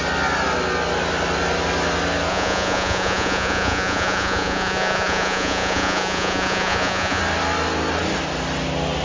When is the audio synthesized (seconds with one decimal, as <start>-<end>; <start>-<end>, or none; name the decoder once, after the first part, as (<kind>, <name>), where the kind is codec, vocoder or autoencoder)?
2.3-7.2 (vocoder, Vocos)

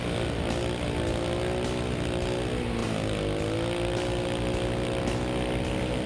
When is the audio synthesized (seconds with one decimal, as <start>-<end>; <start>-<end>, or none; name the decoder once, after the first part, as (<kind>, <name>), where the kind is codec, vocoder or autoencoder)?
none